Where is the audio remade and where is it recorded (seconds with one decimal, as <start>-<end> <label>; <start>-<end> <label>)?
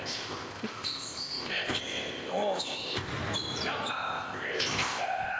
0.0-3.1 remade; 3.1-3.9 recorded; 3.9-5.4 remade